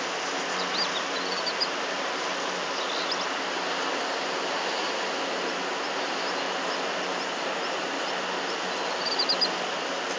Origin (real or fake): real